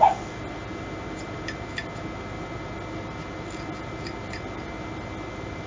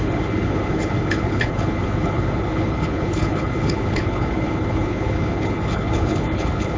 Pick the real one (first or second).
first